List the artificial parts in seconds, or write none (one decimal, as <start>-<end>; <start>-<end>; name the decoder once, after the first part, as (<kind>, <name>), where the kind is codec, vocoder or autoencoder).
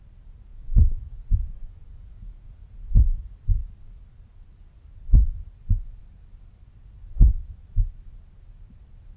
0.5-3.2 (vocoder, Vocos)